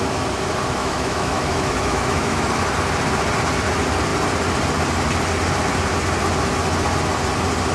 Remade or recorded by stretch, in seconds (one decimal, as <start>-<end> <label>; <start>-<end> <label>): 0.0-0.8 recorded; 0.8-2.5 remade; 2.5-7.7 recorded